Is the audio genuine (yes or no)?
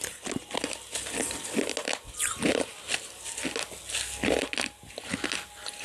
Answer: yes